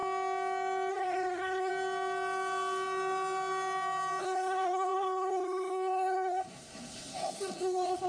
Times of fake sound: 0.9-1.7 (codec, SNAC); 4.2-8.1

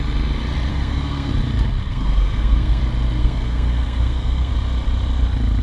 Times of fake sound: 0.7-1.3 (codec, SNAC); 1.8-2.8; 3.2-4.5